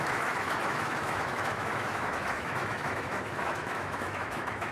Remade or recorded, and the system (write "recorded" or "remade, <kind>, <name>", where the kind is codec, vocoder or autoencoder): remade, autoencoder, DAC-VAE